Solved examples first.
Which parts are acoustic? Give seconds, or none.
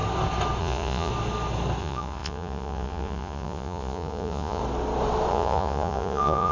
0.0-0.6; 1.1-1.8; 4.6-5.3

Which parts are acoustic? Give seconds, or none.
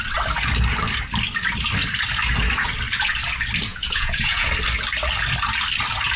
0.0-3.7; 4.5-6.2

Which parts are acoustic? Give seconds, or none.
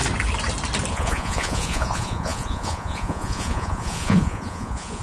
0.0-0.9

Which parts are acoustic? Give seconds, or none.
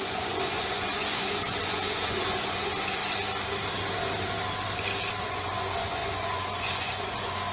3.0-5.2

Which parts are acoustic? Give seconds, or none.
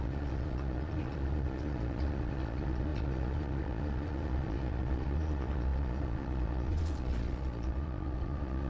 none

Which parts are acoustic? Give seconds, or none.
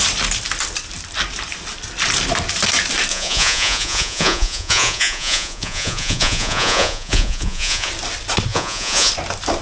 0.0-3.1; 7.9-8.5; 9.1-9.6